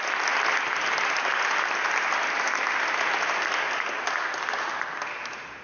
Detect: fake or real real